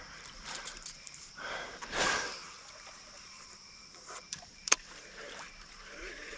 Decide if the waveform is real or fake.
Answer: fake